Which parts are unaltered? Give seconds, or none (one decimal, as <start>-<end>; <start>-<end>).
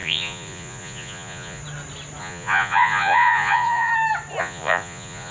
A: 1.6-2.2; 3.9-4.4